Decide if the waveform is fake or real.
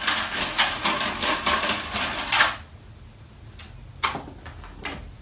real